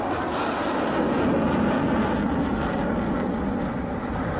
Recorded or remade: recorded